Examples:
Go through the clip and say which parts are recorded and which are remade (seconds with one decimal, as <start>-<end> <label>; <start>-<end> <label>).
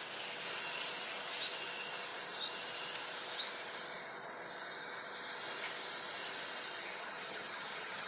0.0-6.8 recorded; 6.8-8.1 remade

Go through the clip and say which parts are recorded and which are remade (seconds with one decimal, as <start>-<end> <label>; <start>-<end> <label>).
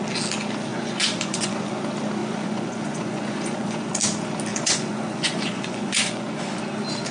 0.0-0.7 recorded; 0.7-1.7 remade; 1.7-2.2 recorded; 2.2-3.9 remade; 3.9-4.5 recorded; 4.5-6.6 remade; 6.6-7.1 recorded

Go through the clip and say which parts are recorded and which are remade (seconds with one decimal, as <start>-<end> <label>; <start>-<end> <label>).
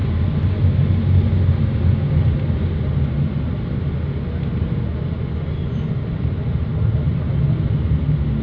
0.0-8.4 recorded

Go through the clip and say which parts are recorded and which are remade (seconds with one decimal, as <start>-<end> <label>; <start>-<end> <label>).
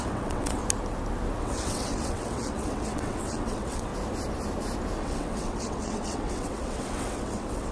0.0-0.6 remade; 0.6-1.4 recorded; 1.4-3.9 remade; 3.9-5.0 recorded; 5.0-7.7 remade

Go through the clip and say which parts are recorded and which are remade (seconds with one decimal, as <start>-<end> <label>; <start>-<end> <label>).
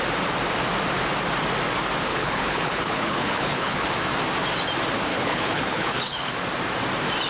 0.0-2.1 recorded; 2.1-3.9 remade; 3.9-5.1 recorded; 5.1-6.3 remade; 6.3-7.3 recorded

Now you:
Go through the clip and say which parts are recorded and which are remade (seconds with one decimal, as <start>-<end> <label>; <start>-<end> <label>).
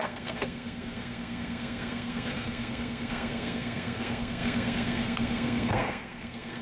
0.0-6.6 remade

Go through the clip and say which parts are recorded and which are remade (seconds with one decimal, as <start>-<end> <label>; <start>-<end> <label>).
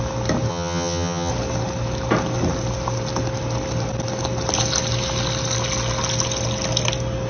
0.0-0.5 recorded; 0.5-1.3 remade; 1.3-7.3 recorded